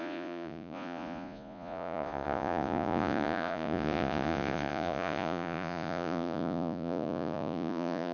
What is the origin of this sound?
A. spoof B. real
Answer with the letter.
A